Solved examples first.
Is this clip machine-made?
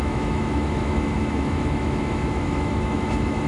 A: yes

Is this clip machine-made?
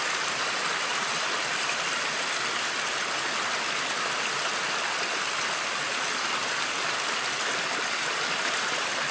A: no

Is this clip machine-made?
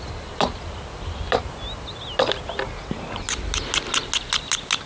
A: no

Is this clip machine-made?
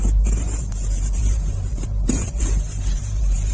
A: yes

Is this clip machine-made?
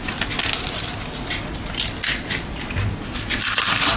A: no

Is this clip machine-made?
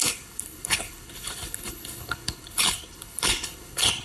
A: yes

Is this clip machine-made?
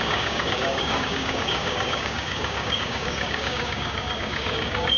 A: yes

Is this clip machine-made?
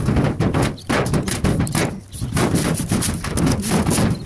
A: no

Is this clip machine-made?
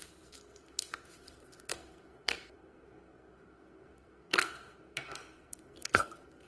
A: yes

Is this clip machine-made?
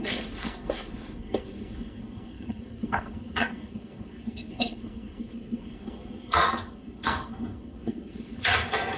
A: yes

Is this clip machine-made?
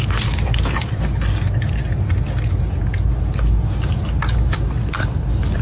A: no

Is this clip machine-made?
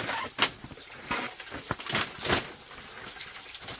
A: no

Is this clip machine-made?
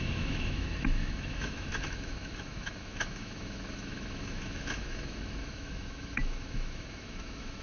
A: yes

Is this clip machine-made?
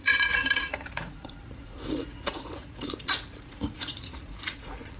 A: yes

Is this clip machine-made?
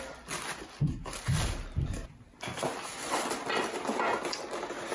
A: no